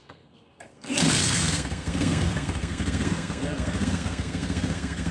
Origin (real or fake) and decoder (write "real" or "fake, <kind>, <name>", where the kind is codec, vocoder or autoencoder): fake, codec, SNAC